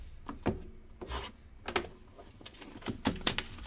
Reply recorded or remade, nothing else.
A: recorded